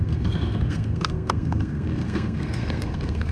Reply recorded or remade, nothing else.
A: remade